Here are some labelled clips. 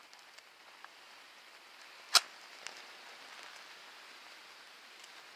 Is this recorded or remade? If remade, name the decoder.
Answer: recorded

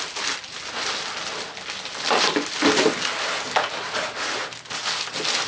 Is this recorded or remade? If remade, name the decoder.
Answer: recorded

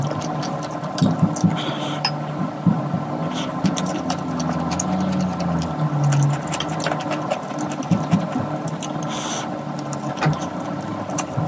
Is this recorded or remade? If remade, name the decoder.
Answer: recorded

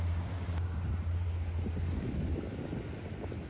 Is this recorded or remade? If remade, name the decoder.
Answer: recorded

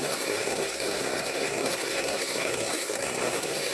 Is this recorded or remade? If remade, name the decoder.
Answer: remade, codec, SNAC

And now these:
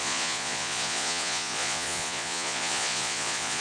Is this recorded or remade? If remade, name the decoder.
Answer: remade, vocoder, Vocos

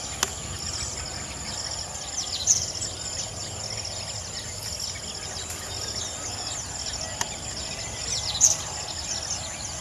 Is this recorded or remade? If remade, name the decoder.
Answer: recorded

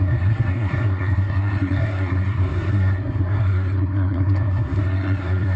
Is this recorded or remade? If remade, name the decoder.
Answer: remade, codec, SNAC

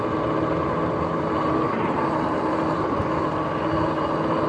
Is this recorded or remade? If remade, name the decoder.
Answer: recorded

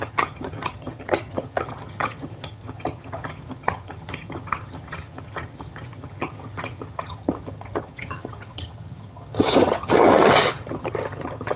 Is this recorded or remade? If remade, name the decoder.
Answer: remade, vocoder, HiFi-GAN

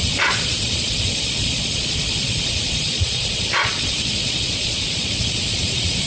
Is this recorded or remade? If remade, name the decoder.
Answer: remade, vocoder, Vocos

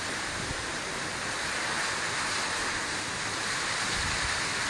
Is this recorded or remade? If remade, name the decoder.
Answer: recorded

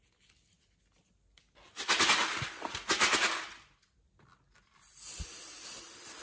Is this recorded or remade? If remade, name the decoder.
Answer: recorded